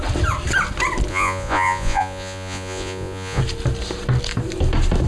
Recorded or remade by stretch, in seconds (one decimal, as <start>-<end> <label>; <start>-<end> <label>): 0.0-1.1 recorded; 1.1-3.4 remade; 3.4-5.1 recorded